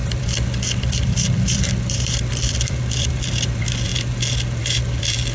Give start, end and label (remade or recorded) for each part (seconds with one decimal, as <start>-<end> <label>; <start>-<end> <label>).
0.0-3.9 remade; 3.9-4.6 recorded; 4.6-5.3 remade